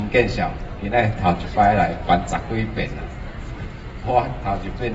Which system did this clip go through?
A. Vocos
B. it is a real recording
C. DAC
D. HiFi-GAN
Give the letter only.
B